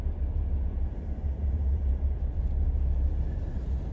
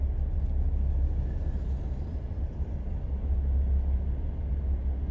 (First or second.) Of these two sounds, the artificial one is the first